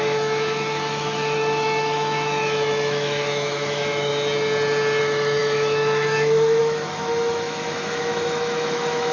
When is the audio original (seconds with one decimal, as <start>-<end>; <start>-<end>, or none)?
4.1-5.0